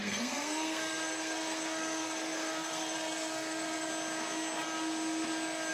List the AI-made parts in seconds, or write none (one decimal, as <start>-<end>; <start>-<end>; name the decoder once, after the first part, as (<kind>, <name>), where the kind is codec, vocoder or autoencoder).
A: 0.0-3.9 (codec, SNAC)